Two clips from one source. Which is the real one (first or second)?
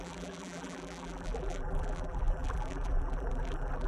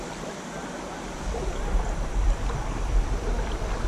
second